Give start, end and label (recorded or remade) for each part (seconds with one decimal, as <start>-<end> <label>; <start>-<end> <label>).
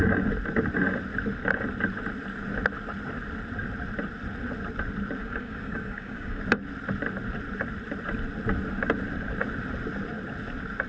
0.0-5.2 recorded; 5.2-6.4 remade; 6.4-10.9 recorded